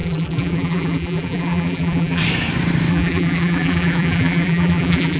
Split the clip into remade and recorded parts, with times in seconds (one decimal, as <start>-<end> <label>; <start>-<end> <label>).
0.0-2.2 remade; 2.2-2.9 recorded; 2.9-5.2 remade